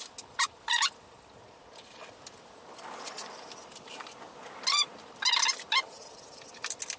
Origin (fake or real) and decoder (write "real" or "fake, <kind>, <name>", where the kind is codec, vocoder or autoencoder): real